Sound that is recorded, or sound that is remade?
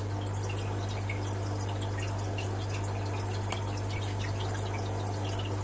recorded